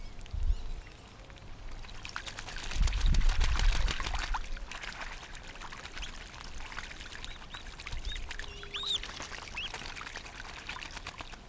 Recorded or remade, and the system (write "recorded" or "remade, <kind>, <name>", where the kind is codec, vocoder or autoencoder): recorded